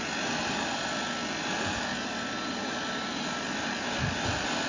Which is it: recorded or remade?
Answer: recorded